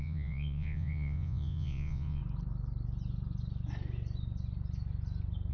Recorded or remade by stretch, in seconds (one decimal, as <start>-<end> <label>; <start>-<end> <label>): 0.0-2.2 remade; 2.2-5.5 recorded